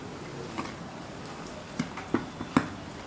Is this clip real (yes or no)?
yes